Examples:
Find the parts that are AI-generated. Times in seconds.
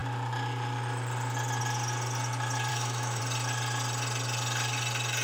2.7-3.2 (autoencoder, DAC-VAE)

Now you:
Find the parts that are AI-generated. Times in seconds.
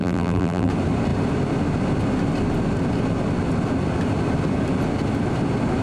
0.0-0.7 (vocoder, BigVGAN v2)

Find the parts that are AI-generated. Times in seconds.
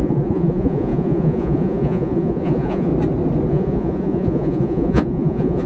0.0-2.9 (vocoder, Vocos); 3.5-5.7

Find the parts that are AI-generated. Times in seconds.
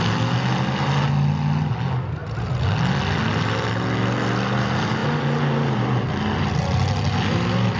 none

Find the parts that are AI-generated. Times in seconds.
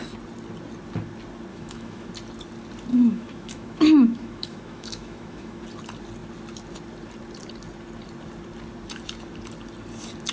1.5-2.1 (autoencoder, DAC-VAE); 2.9-5.6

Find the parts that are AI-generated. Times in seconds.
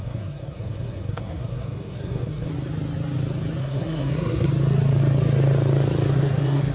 0.0-2.5 (codec, SNAC); 3.6-4.5; 6.1-6.7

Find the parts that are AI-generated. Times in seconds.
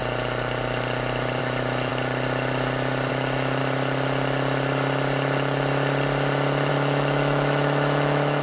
1.4-1.9 (autoencoder, DAC-VAE); 3.1-3.6; 6.7-8.4